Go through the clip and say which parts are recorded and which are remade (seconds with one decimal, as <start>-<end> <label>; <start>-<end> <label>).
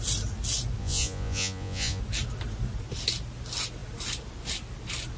0.0-0.8 recorded; 0.8-2.0 remade; 2.0-5.2 recorded